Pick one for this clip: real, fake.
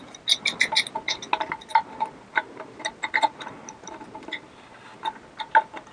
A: real